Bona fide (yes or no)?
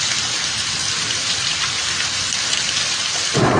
no